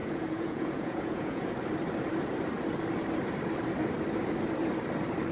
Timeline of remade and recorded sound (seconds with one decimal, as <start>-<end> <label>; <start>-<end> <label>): 0.0-1.5 remade; 1.5-5.3 recorded